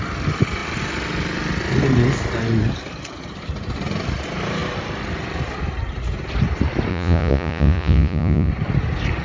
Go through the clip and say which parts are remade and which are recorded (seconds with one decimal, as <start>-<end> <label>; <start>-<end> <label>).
0.0-6.9 recorded; 6.9-8.5 remade; 8.5-9.2 recorded